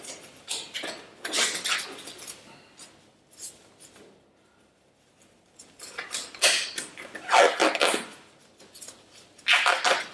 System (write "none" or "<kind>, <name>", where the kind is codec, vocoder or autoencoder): none